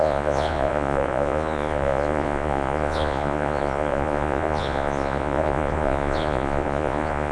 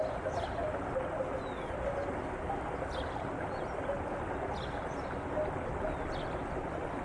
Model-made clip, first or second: first